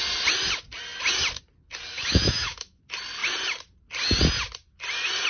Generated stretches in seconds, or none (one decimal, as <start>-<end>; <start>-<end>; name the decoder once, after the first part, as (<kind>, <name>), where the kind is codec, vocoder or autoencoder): 1.9-2.8 (autoencoder, DAC-VAE)

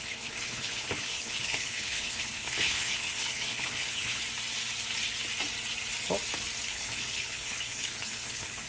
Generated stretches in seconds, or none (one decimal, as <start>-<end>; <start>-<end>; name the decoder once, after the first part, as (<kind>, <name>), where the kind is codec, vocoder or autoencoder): 0.0-4.2 (codec, HILCodec); 6.7-8.7

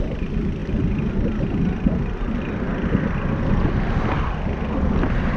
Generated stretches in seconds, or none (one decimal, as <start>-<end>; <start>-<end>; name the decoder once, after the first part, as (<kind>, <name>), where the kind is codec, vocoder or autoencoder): none

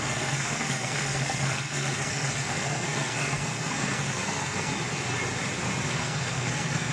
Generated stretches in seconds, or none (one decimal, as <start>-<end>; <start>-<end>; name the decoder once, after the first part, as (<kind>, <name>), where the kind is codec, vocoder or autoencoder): 0.0-4.7 (codec, SNAC); 5.9-6.9

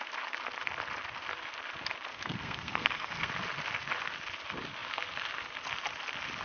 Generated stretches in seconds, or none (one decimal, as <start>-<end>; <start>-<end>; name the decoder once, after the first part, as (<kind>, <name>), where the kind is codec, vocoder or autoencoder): 2.1-3.3 (codec, SNAC)

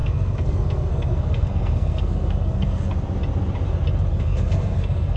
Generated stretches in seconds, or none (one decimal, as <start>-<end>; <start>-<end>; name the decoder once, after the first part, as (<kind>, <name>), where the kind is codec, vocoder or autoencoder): 0.0-2.9 (codec, SNAC); 4.1-5.2

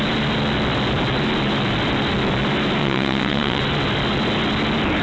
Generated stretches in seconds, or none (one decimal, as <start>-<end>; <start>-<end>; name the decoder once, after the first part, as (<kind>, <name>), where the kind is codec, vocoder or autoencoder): 2.8-3.6 (vocoder, WaveNeXt)

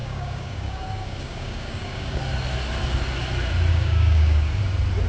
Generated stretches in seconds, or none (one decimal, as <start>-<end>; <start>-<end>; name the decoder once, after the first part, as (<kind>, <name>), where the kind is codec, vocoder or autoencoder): 0.0-2.2 (codec, DAC); 3.7-4.6